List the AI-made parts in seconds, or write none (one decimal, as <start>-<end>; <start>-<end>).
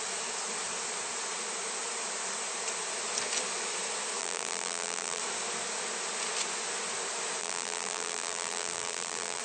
4.2-5.2; 7.4-9.4